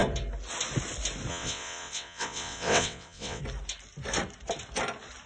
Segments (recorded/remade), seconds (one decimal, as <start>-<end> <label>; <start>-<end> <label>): 0.0-1.3 recorded; 1.3-3.4 remade; 3.4-5.3 recorded